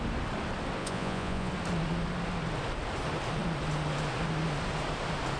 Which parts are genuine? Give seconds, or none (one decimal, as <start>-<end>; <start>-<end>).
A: 0.0-0.8; 1.5-5.4